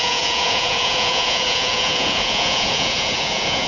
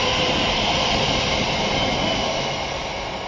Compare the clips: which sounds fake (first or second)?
first